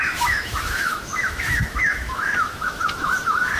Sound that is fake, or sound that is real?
fake